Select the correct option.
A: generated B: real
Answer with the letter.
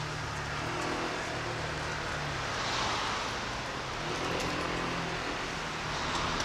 B